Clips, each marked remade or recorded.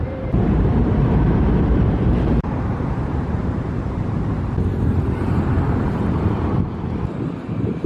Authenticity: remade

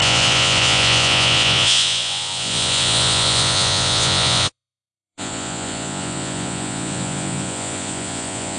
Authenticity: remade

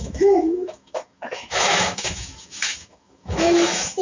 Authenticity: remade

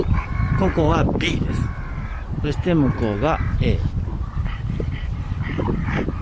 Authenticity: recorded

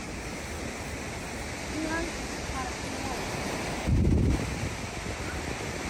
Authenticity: recorded